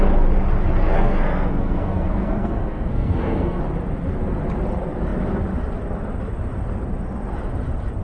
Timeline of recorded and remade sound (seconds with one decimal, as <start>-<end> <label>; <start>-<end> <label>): 0.0-0.8 recorded; 0.8-3.6 remade; 3.6-8.0 recorded